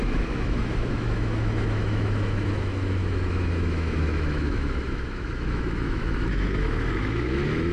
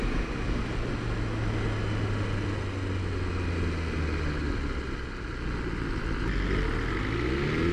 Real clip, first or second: second